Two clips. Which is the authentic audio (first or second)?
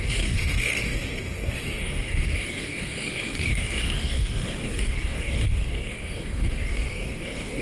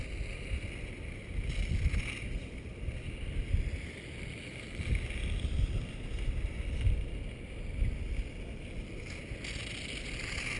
second